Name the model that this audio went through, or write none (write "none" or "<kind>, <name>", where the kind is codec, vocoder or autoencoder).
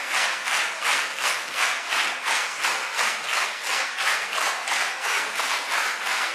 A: codec, SNAC